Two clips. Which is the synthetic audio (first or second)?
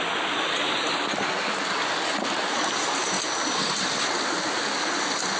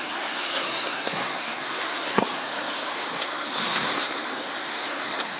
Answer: second